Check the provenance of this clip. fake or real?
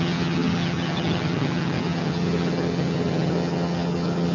fake